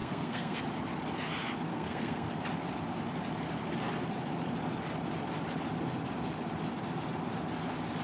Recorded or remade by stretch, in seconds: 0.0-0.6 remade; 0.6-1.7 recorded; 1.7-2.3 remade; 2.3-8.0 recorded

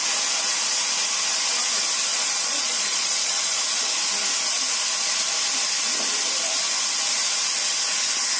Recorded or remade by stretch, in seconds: 0.0-2.1 recorded; 2.1-3.6 remade; 3.6-8.4 recorded

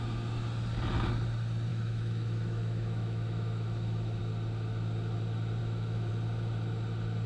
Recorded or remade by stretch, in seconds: 0.0-1.7 recorded; 1.7-4.2 remade; 4.2-5.6 recorded; 5.6-6.1 remade; 6.1-7.3 recorded

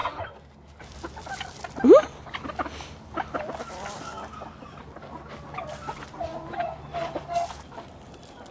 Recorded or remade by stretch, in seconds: 0.0-8.5 recorded